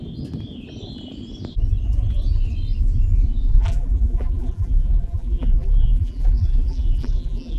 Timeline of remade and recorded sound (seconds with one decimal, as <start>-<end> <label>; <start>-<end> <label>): 0.0-3.5 recorded; 3.5-7.6 remade